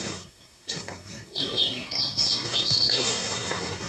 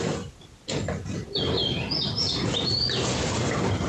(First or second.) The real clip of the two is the second